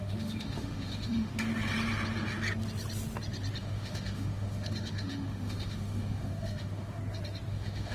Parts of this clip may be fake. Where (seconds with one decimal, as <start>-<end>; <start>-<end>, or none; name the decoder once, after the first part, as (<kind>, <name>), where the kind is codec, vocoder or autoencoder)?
0.0-1.3 (autoencoder, DAC-VAE); 3.6-7.0; 7.5-7.9